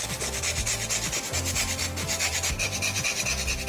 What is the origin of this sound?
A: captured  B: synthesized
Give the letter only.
A